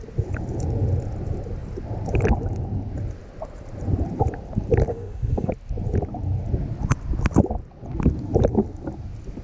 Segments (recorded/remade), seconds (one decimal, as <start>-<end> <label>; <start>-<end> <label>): 0.0-4.9 recorded; 4.9-5.5 remade; 5.5-9.4 recorded